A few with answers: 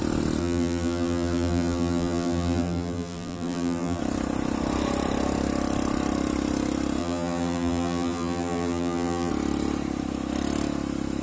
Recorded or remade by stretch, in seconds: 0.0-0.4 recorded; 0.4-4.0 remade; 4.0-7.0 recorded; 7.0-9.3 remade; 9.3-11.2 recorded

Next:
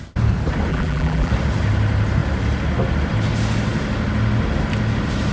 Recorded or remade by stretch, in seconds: 0.0-0.7 recorded; 0.7-1.3 remade; 1.3-5.3 recorded

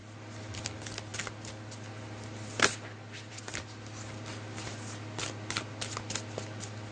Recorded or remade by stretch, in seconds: 0.0-6.9 recorded

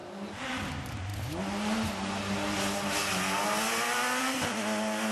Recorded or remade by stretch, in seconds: 0.0-0.7 remade; 0.7-5.1 recorded

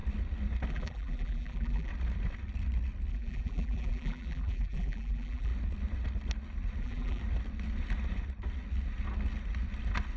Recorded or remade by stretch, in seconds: 0.0-0.7 recorded; 0.7-1.9 remade; 1.9-3.1 recorded; 3.1-5.5 remade; 5.5-6.8 recorded; 6.8-7.2 remade; 7.2-10.2 recorded

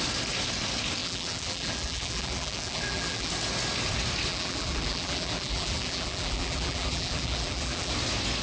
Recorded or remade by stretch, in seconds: 0.0-1.0 recorded; 1.0-3.3 remade; 3.3-4.3 recorded; 4.3-7.9 remade; 7.9-8.4 recorded

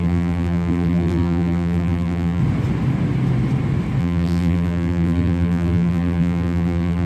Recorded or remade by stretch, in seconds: 0.0-2.4 remade; 2.4-4.0 recorded; 4.0-7.1 remade